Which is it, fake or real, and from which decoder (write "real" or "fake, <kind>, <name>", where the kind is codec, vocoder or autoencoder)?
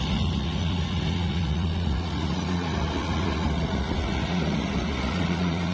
fake, vocoder, Vocos